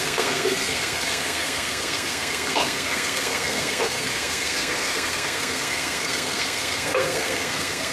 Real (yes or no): no